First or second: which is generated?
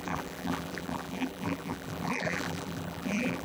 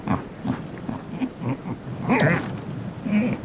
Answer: first